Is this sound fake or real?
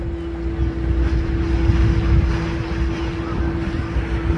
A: real